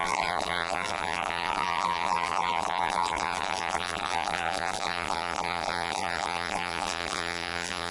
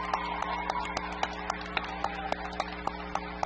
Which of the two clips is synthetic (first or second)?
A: first